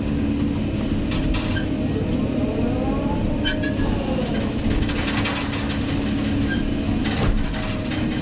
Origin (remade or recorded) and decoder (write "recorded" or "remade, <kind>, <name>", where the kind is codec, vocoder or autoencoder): recorded